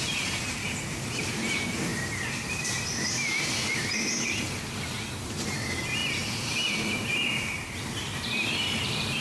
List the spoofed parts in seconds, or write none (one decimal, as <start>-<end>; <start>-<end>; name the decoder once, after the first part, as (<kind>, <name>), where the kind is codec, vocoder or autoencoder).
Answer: 0.0-3.6 (vocoder, BigVGAN v2); 4.4-6.0; 6.7-9.2